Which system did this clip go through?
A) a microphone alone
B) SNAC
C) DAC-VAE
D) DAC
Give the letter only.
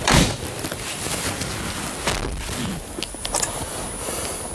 A